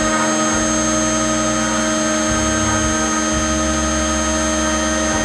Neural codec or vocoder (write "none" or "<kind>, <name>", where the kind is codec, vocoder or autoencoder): none